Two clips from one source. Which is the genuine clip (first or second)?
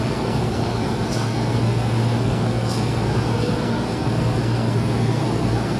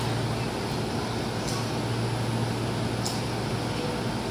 second